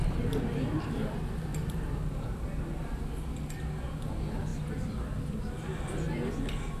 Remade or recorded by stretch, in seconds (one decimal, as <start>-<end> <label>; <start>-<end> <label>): 0.0-1.5 recorded; 1.5-3.0 remade; 3.0-6.8 recorded